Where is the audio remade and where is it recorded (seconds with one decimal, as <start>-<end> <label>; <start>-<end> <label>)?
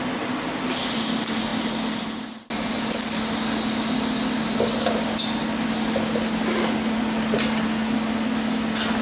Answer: 0.0-9.0 recorded